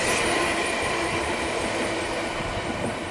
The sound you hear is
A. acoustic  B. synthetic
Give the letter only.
A